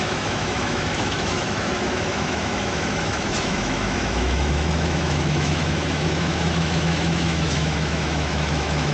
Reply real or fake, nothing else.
fake